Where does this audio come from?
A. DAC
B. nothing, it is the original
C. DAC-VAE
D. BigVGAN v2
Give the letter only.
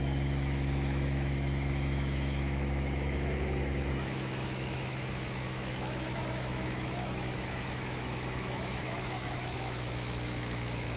C